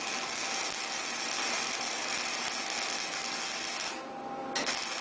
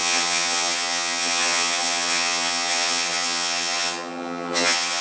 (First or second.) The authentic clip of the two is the first